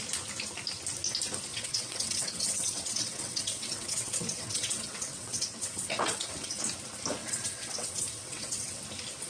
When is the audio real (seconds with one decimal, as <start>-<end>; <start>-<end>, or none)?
0.0-1.5; 6.6-7.2; 8.8-9.3